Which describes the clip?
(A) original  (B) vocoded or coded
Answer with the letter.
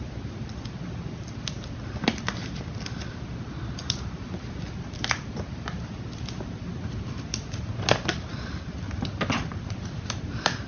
A